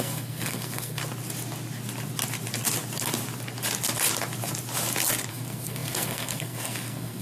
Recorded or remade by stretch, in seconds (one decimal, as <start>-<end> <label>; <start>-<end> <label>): 0.0-1.0 remade; 1.0-5.3 recorded; 5.3-7.2 remade